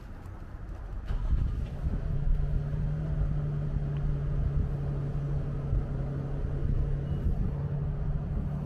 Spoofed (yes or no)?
no